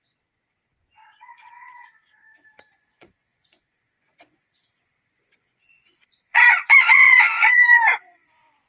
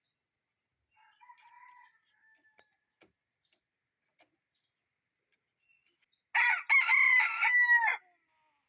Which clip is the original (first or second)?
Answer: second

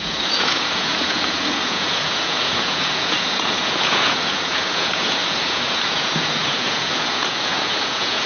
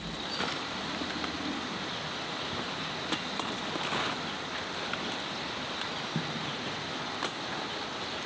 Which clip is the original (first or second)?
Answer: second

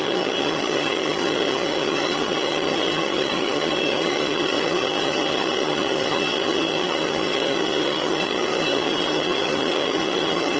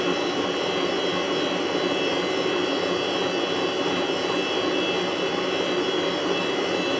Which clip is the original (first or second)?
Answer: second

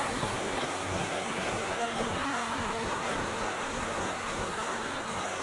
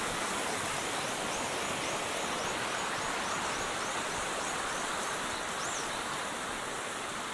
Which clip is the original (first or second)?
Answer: second